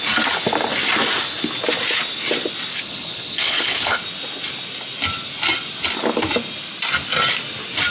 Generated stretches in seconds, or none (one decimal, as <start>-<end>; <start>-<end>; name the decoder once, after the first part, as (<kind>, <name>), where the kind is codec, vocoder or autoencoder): 2.7-4.0 (codec, HILCodec)